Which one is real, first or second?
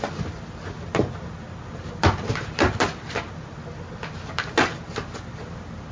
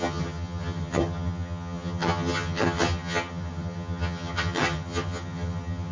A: first